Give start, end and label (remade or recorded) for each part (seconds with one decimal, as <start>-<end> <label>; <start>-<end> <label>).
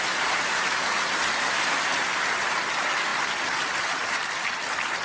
0.0-5.0 recorded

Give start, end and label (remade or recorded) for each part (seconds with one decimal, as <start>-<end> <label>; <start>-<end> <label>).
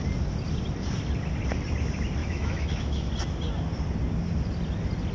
0.0-2.2 recorded; 2.2-3.1 remade; 3.1-5.1 recorded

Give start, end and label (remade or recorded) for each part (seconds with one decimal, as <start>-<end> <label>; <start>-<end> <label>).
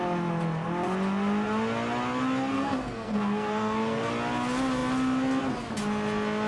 0.0-2.5 recorded; 2.5-4.1 remade; 4.1-6.5 recorded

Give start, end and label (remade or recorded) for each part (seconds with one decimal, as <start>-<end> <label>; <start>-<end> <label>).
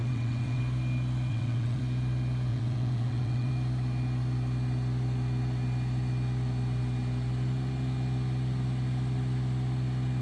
0.0-0.6 remade; 0.6-1.3 recorded; 1.3-1.8 remade; 1.8-2.5 recorded; 2.5-3.5 remade; 3.5-10.2 recorded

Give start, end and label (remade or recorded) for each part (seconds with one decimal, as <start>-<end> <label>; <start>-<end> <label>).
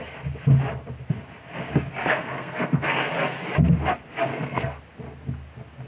0.0-2.0 recorded; 2.0-3.1 remade; 3.1-4.3 recorded; 4.3-4.8 remade; 4.8-5.9 recorded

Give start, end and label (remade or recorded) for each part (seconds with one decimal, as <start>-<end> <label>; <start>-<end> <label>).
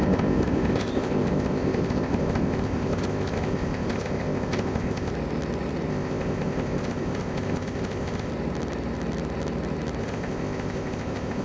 0.0-5.1 remade; 5.1-5.9 recorded; 5.9-8.3 remade; 8.3-10.0 recorded; 10.0-11.4 remade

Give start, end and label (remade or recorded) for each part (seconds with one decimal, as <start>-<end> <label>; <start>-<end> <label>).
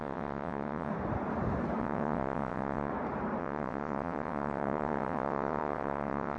0.0-0.9 remade; 0.9-1.8 recorded; 1.8-2.9 remade; 2.9-3.4 recorded; 3.4-6.4 remade